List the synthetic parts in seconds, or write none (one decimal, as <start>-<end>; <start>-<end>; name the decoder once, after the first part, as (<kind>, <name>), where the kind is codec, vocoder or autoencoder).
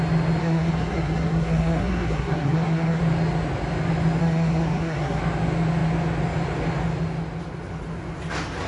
0.4-3.0 (codec, SNAC); 4.2-5.2